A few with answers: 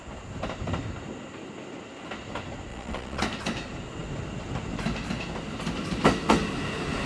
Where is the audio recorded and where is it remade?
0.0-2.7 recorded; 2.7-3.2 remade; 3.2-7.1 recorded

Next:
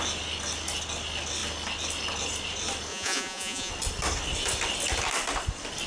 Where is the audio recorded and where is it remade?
0.0-2.9 recorded; 2.9-3.7 remade; 3.7-5.9 recorded

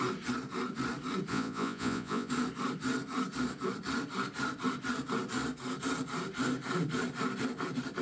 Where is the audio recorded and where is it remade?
0.0-1.3 recorded; 1.3-2.3 remade; 2.3-8.0 recorded

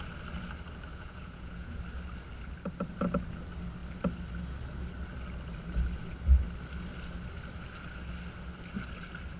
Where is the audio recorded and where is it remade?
0.0-0.9 recorded; 0.9-1.8 remade; 1.8-9.4 recorded